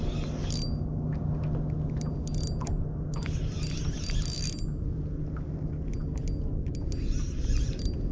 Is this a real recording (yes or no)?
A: yes